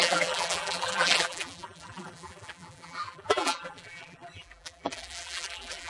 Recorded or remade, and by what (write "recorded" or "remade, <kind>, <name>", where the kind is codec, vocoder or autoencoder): remade, vocoder, BigVGAN v2